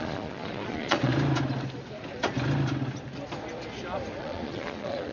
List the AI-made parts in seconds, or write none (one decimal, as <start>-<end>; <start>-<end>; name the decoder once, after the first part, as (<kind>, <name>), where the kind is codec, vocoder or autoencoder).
0.0-1.1 (vocoder, Vocos); 4.2-5.1